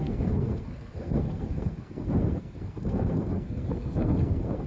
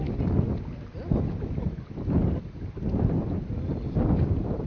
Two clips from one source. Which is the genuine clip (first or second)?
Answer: second